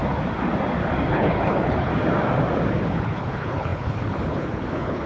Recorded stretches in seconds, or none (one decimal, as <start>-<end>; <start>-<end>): 0.0-1.1; 1.9-2.9